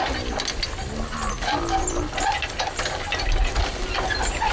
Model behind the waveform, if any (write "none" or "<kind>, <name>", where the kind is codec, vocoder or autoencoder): none